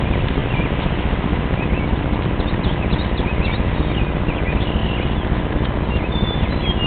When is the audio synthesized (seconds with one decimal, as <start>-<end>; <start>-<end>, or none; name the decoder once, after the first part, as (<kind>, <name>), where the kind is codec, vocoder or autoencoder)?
4.8-5.5 (vocoder, BigVGAN v2)